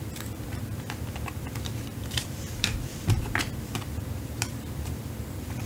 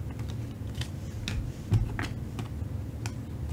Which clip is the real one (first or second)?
second